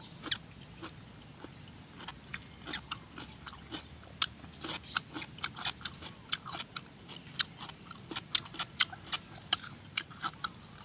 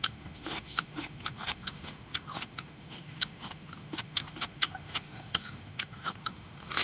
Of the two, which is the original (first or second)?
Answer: first